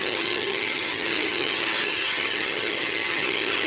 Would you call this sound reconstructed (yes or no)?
yes